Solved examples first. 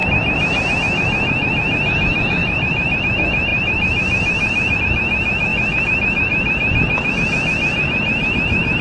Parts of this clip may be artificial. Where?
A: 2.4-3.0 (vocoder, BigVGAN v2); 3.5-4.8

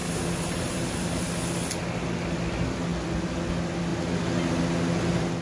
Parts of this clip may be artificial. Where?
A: 0.0-1.3 (vocoder, BigVGAN v2)

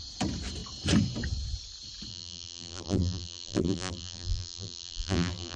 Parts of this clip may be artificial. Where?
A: 2.1-5.6 (vocoder, BigVGAN v2)